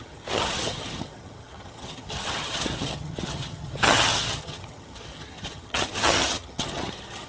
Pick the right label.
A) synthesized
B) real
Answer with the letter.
A